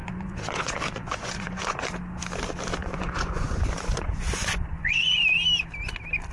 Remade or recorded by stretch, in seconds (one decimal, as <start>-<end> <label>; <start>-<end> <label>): 0.0-1.9 remade; 1.9-2.8 recorded; 2.8-5.2 remade; 5.2-6.3 recorded